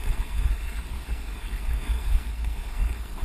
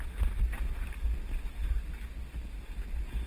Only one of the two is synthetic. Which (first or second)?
first